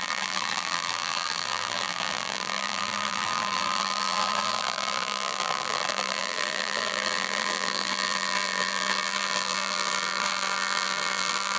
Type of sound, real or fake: fake